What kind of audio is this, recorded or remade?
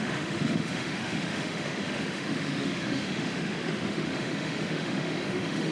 remade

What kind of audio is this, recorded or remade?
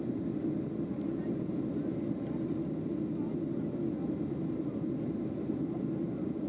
recorded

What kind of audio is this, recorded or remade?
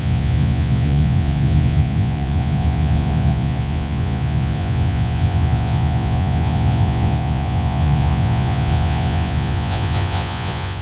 remade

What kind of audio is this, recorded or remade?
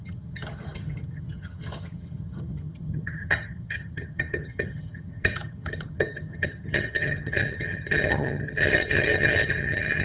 remade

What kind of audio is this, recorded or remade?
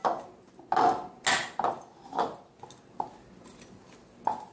recorded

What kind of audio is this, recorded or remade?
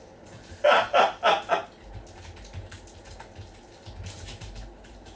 recorded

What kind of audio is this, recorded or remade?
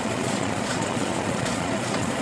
remade